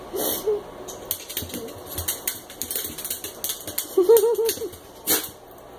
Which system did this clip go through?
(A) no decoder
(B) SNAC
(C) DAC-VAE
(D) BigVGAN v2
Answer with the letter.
A